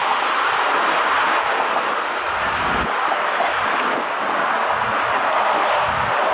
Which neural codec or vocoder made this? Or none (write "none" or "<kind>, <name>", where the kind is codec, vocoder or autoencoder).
none